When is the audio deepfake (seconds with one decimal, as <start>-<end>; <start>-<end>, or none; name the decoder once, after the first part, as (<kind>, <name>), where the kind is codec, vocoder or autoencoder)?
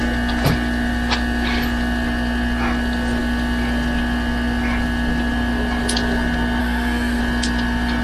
6.6-7.2 (codec, SNAC)